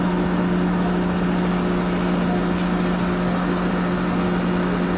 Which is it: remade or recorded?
recorded